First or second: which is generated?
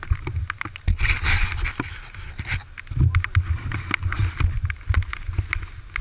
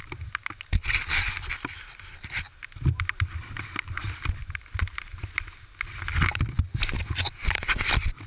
second